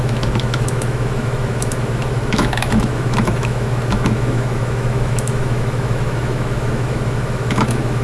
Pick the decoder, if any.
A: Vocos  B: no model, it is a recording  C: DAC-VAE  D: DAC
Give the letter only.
C